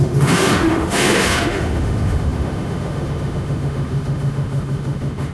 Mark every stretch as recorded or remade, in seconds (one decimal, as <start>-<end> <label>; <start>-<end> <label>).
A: 0.0-5.3 remade